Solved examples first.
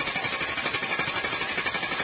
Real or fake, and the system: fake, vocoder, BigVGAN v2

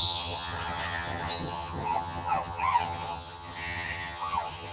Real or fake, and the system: fake, vocoder, HiFi-GAN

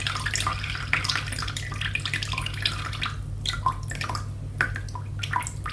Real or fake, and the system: real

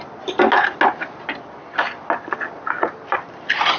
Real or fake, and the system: real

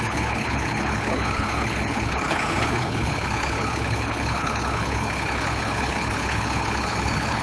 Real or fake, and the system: fake, codec, HILCodec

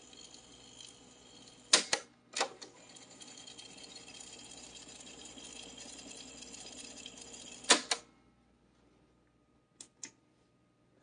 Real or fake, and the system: real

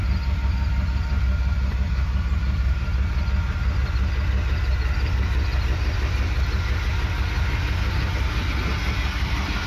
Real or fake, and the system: real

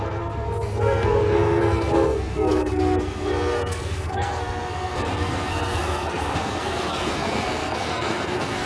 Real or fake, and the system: fake, codec, SNAC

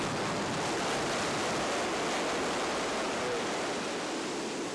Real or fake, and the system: real